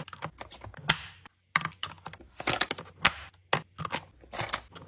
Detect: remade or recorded recorded